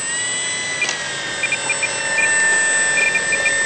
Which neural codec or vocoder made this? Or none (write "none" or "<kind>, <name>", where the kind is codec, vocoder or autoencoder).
none